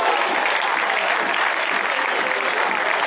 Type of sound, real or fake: real